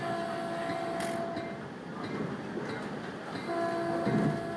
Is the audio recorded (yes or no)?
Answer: yes